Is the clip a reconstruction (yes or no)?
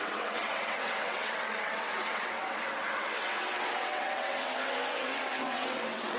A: yes